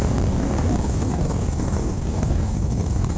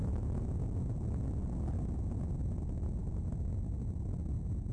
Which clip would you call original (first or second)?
second